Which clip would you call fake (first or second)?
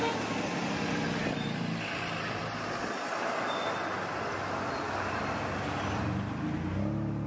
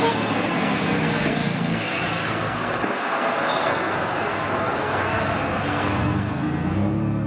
second